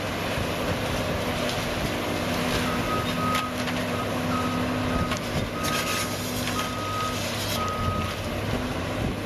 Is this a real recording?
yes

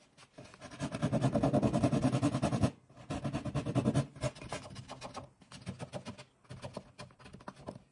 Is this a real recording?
yes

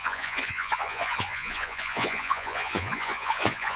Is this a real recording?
no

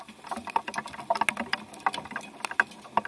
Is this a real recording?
yes